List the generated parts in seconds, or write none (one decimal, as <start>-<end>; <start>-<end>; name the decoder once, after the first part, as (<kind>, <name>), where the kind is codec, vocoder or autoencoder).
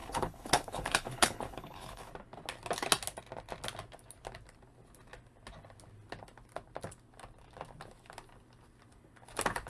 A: 0.0-2.1 (codec, HILCodec)